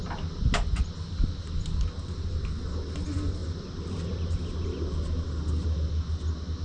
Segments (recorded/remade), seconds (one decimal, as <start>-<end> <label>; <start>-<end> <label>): 0.0-6.6 recorded